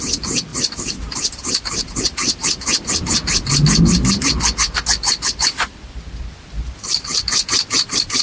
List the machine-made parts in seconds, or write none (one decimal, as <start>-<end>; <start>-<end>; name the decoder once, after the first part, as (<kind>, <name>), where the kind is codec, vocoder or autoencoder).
0.0-0.5 (vocoder, BigVGAN v2); 1.8-2.4; 3.5-8.2